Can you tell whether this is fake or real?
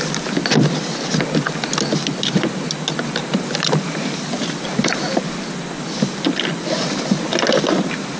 real